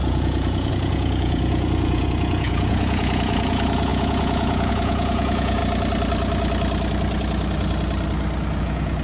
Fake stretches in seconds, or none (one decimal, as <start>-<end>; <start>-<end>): 0.0-5.6; 8.6-9.0